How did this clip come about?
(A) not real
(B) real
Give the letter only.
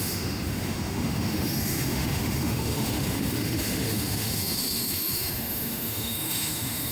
A